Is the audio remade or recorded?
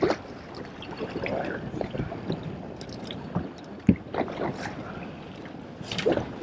recorded